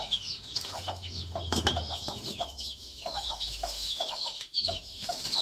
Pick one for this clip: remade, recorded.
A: remade